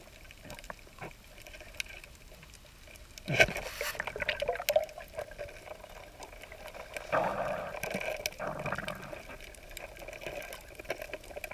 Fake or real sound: real